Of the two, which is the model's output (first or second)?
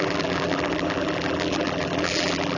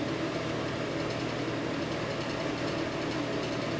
first